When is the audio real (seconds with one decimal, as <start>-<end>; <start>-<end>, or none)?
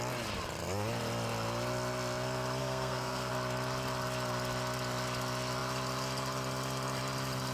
0.0-2.6; 3.3-7.5